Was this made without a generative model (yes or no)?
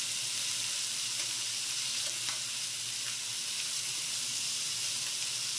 yes